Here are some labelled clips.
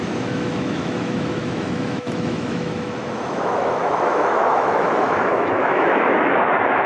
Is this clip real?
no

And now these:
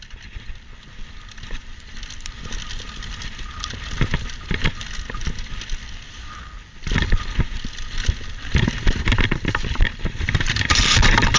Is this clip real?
yes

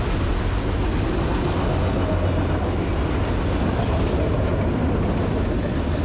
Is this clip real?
yes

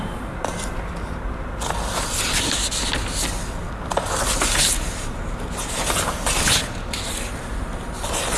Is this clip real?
yes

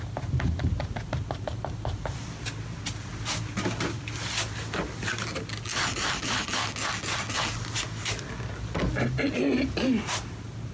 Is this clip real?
yes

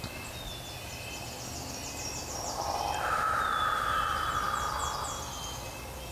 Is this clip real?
yes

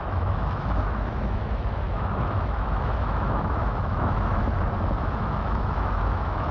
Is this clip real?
no